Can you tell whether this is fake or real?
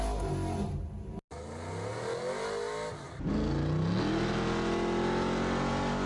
real